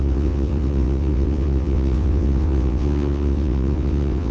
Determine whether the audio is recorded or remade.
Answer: remade